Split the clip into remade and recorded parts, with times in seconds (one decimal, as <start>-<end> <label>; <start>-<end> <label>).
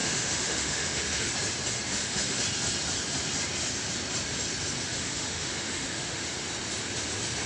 0.0-1.3 remade; 1.3-1.9 recorded; 1.9-2.4 remade; 2.4-4.8 recorded; 4.8-6.5 remade; 6.5-7.5 recorded